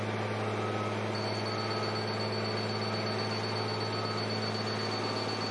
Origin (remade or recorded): recorded